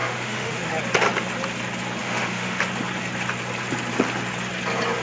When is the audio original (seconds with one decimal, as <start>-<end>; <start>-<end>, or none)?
0.7-2.0; 2.6-5.0